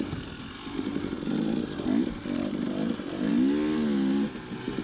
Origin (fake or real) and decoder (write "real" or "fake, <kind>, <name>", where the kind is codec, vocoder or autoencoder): real